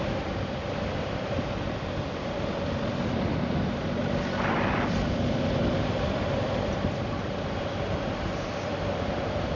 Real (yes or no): no